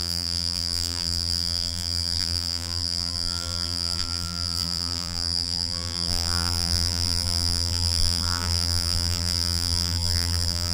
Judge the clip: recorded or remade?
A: remade